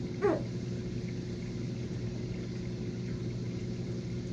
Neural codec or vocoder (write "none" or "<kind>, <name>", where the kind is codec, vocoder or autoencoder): none